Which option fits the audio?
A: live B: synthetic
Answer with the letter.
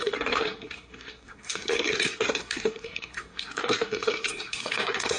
B